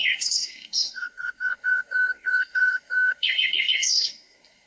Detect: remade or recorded remade